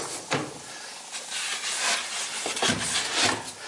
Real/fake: real